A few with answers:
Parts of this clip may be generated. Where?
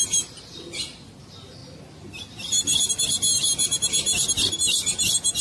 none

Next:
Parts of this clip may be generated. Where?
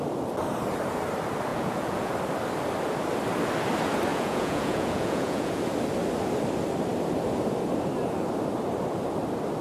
1.5-2.1 (vocoder, Vocos); 4.1-5.6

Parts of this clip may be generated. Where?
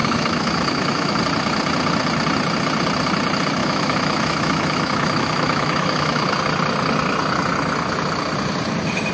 0.0-1.2 (autoencoder, DAC-VAE); 3.6-6.3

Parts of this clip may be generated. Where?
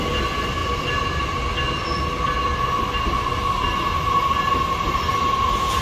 none